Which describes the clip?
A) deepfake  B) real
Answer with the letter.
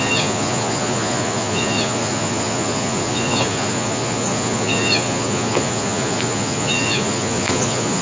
A